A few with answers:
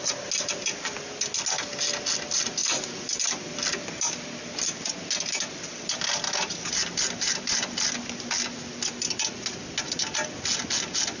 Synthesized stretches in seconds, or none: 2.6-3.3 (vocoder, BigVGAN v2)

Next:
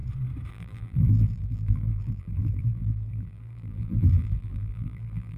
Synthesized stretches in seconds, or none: 0.5-5.4 (vocoder, BigVGAN v2)

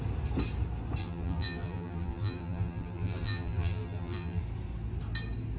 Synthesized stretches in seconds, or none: 1.0-4.4 (vocoder, BigVGAN v2)

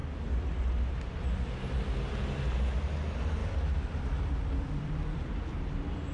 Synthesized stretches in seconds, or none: 3.4-5.6 (vocoder, BigVGAN v2)

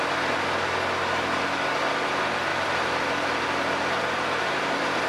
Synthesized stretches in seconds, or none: 2.5-4.4 (vocoder, BigVGAN v2)

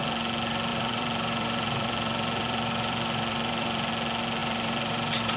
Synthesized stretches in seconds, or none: 0.7-3.9 (vocoder, BigVGAN v2); 4.4-5.4

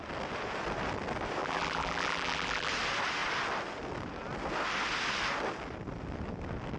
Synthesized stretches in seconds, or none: 1.4-2.7 (vocoder, BigVGAN v2)

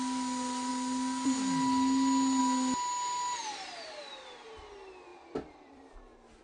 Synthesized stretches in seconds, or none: 3.4-4.5 (vocoder, BigVGAN v2); 5.1-5.9